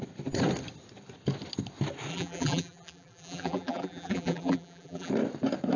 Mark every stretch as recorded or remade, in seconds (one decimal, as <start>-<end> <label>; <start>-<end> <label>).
0.0-2.1 recorded; 2.1-5.1 remade; 5.1-5.8 recorded